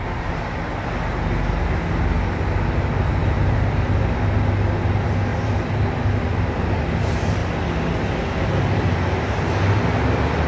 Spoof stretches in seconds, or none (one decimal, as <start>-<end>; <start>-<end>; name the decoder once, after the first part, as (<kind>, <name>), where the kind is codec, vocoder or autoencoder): 3.2-4.2 (vocoder, BigVGAN v2); 5.3-6.8